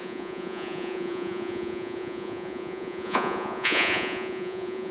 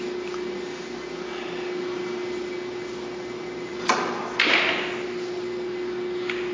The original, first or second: second